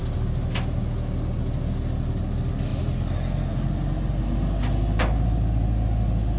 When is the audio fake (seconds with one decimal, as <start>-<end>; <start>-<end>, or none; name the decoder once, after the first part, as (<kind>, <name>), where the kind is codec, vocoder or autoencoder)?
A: none